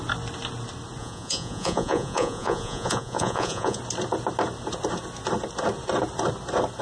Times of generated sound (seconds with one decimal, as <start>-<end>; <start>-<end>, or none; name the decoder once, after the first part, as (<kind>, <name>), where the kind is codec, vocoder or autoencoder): 1.0-3.8 (vocoder, Vocos)